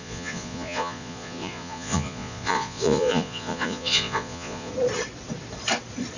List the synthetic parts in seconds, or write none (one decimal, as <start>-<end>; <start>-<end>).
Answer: 0.0-4.7

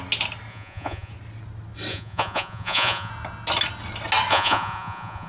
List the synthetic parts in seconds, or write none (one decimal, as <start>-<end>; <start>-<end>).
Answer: 0.5-1.1; 1.9-3.1; 4.3-5.3

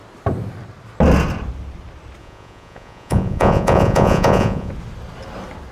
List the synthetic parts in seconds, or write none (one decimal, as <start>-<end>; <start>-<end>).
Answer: 2.2-4.7

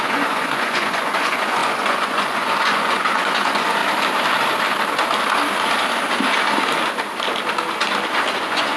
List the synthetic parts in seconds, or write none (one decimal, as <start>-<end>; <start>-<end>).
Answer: 0.0-3.8; 8.4-8.8

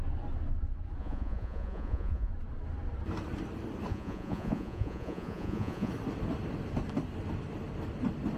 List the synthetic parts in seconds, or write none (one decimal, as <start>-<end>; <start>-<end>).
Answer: 1.0-2.3; 3.9-5.9

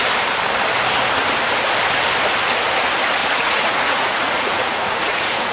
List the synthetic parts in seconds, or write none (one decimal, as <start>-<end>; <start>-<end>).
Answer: 3.2-5.5

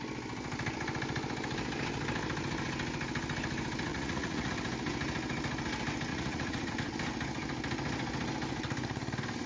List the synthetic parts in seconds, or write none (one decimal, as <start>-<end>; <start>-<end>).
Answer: 3.9-4.5; 6.1-6.7